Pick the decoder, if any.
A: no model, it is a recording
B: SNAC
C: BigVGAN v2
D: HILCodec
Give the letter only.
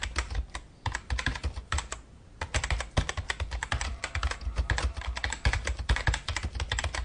A